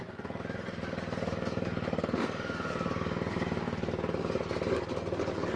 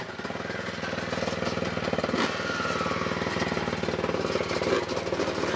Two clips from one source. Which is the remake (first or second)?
first